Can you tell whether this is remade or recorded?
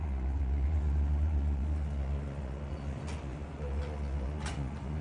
remade